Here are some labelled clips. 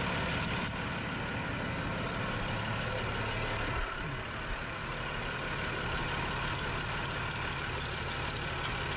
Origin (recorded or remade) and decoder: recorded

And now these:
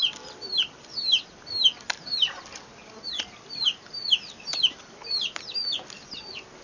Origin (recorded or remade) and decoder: recorded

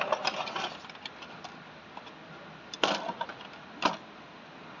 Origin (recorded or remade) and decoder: recorded